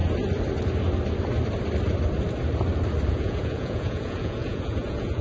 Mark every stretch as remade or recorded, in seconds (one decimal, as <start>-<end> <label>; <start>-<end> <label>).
0.0-3.1 recorded; 3.1-5.2 remade